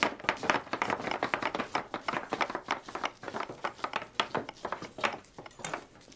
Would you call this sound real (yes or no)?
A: yes